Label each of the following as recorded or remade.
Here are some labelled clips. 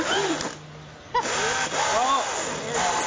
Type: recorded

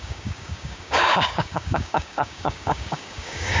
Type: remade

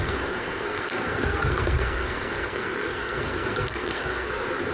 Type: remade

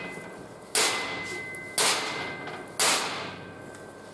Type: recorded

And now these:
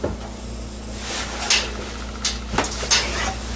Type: recorded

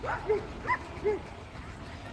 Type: recorded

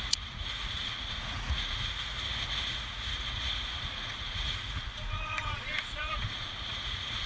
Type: remade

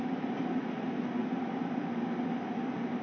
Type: recorded